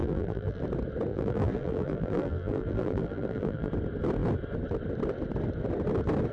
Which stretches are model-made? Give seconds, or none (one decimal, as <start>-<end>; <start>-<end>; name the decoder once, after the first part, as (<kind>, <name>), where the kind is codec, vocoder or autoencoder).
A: 0.0-0.6 (vocoder, BigVGAN v2); 1.1-3.7